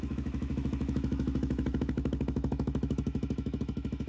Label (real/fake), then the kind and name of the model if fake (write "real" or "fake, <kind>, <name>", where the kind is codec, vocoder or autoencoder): fake, autoencoder, DAC-VAE